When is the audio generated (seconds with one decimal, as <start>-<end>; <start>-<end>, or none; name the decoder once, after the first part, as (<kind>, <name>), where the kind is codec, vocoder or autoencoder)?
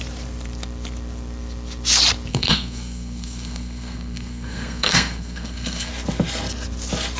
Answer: 2.3-5.9 (codec, SNAC)